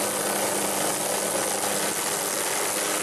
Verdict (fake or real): real